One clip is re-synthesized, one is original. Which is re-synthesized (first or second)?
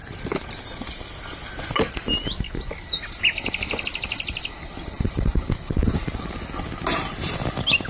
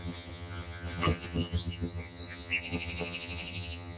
second